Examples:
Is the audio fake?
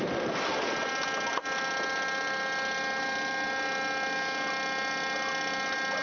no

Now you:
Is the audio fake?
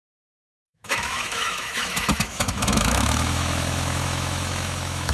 yes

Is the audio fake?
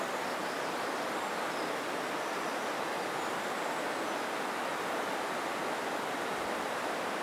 no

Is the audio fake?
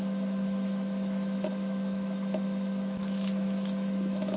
yes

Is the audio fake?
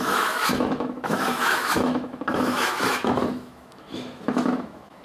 yes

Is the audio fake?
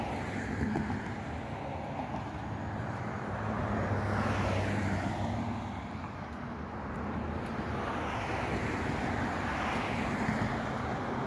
no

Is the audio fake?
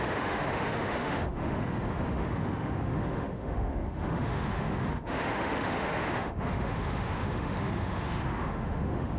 yes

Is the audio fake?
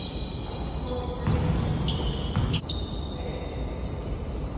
no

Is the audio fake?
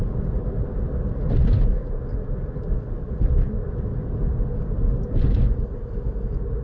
no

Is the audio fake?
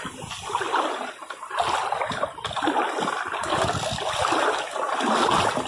no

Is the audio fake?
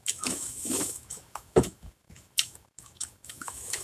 yes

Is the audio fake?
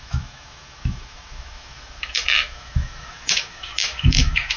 yes